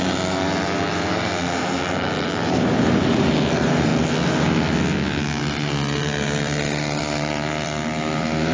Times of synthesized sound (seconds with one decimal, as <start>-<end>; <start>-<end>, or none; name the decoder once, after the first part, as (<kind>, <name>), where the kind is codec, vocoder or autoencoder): 0.0-3.9 (vocoder, BigVGAN v2); 5.4-8.5